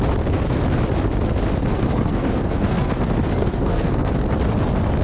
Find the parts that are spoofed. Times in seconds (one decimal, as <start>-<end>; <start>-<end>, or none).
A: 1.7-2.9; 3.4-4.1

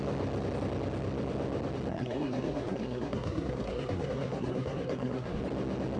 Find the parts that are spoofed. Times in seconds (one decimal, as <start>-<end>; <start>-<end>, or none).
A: 1.9-5.4

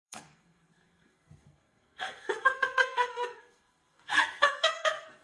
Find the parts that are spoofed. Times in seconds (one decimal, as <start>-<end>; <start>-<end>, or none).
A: 0.0-5.2

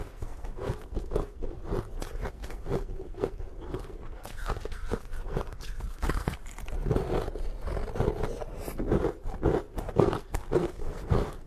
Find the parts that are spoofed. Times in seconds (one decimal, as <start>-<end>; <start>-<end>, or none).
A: 0.0-1.6; 2.3-6.4; 9.9-11.5

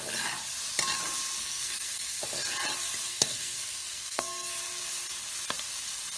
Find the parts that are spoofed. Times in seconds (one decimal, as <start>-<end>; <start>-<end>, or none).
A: 1.4-2.2; 3.1-4.5